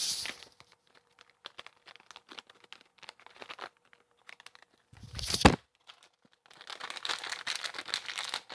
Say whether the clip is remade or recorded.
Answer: recorded